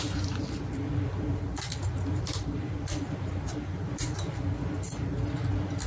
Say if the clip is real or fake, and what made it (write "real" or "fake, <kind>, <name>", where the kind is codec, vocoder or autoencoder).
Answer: real